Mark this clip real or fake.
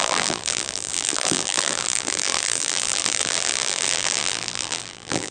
fake